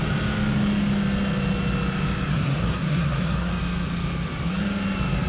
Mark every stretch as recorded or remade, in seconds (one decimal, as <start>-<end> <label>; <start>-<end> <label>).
0.0-2.3 recorded; 2.3-3.5 remade; 3.5-5.3 recorded